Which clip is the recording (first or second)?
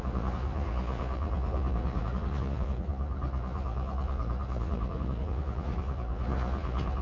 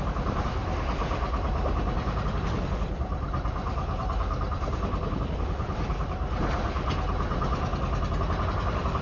second